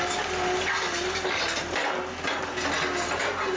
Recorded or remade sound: recorded